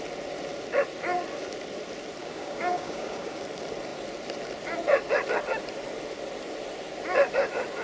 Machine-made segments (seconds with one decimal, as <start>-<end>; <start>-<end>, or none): 2.2-3.4